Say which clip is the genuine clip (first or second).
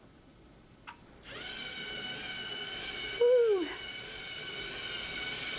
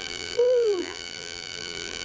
first